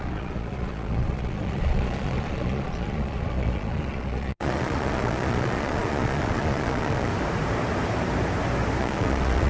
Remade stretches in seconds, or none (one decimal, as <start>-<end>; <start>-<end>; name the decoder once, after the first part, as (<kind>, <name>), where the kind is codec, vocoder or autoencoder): 0.0-7.1 (vocoder, Vocos); 8.8-9.5